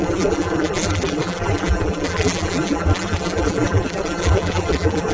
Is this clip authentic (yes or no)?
no